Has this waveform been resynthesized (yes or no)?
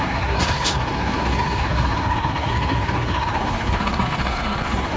yes